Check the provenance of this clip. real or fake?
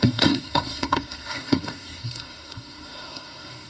fake